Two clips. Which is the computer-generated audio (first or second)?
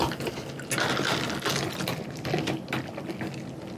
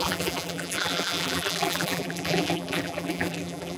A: second